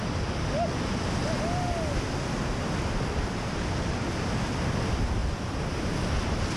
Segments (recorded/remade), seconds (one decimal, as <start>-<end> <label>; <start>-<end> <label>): 0.0-6.6 recorded